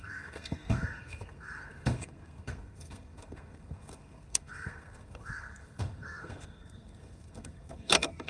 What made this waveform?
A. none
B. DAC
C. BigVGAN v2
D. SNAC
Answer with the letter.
D